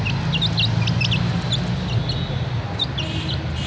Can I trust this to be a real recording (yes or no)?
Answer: yes